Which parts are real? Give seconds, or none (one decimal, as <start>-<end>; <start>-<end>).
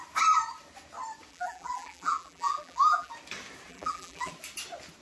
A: 0.0-1.3; 3.1-3.7; 4.3-5.0